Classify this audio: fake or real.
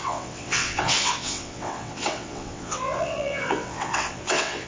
fake